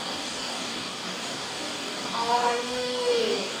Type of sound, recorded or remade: remade